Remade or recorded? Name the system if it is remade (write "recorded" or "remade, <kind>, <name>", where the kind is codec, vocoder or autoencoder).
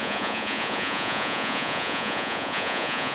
remade, vocoder, Vocos